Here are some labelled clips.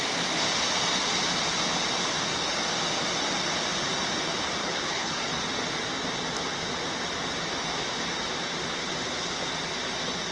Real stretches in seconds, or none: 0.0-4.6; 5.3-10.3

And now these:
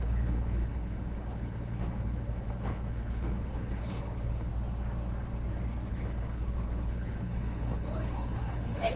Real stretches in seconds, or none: 4.5-5.9